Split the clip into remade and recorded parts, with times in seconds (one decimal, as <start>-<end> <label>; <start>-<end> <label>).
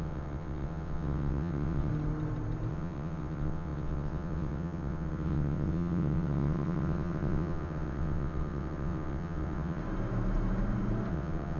0.0-1.9 remade; 1.9-2.7 recorded; 2.7-9.8 remade; 9.8-11.1 recorded; 11.1-11.6 remade